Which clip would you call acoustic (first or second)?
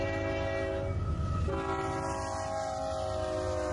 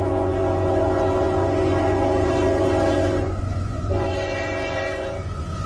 first